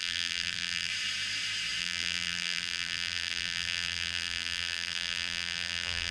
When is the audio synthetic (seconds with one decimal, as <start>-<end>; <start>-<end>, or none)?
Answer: 0.0-0.9; 1.8-6.1